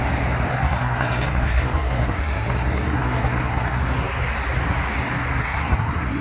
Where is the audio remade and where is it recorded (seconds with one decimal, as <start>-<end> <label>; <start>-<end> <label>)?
0.0-0.5 recorded; 0.5-3.8 remade; 3.8-5.4 recorded; 5.4-6.2 remade

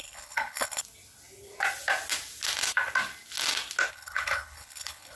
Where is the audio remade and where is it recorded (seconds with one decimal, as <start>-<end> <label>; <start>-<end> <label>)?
0.0-0.8 remade; 0.8-3.9 recorded; 3.9-5.2 remade

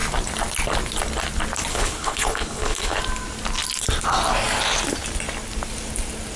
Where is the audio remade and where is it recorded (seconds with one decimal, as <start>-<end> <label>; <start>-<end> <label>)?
0.0-1.7 recorded; 1.7-3.0 remade; 3.0-6.4 recorded

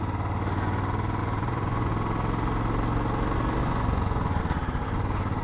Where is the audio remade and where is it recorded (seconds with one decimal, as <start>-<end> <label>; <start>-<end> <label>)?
0.0-1.2 recorded; 1.2-1.9 remade; 1.9-3.6 recorded; 3.6-4.4 remade; 4.4-5.4 recorded

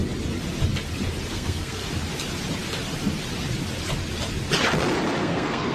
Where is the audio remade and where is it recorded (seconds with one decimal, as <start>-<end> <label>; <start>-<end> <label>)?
0.0-1.3 recorded; 1.3-1.8 remade; 1.8-5.2 recorded; 5.2-5.7 remade

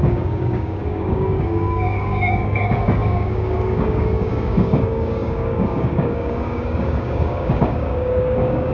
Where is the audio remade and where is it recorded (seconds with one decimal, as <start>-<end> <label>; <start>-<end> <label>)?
0.0-8.7 remade

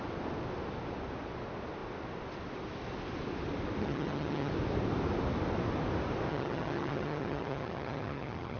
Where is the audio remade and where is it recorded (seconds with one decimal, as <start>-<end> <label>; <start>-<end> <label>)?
0.0-3.8 recorded; 3.8-4.5 remade; 4.5-6.3 recorded; 6.3-8.6 remade